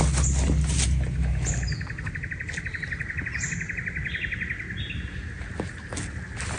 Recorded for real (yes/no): yes